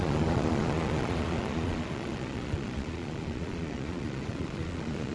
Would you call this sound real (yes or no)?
no